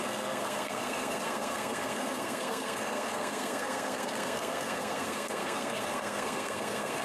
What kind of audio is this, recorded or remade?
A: remade